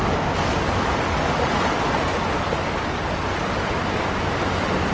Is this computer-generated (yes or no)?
no